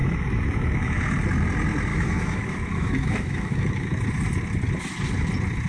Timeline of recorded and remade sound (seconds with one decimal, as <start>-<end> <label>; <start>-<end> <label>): 0.0-1.0 remade; 1.0-1.9 recorded; 1.9-4.0 remade; 4.0-5.7 recorded